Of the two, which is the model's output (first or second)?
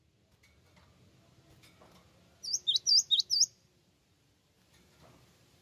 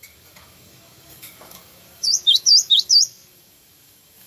second